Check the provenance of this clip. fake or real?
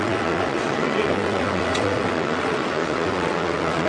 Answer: fake